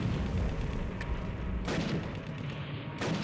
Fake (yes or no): no